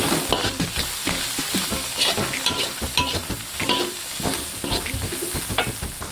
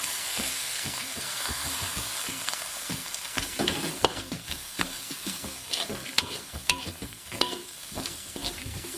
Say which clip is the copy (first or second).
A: second